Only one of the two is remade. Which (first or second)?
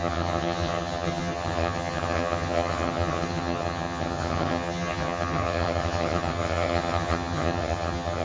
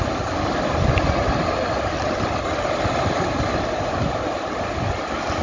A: first